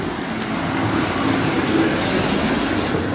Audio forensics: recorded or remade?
recorded